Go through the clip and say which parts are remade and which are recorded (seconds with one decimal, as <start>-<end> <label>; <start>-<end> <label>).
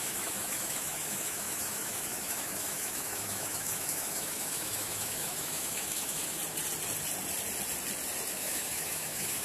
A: 0.0-6.4 remade; 6.4-8.3 recorded; 8.3-9.4 remade